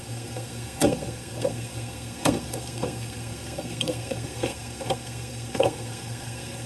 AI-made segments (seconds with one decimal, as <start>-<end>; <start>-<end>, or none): 0.0-6.7